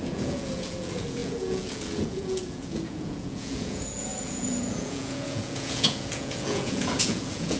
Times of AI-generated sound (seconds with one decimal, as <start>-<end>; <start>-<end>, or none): 0.0-7.6